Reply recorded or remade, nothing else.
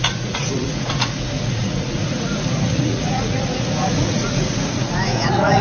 remade